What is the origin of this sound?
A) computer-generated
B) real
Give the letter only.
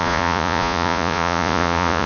A